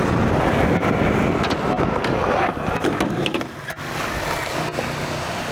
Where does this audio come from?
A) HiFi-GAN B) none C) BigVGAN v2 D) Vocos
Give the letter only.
B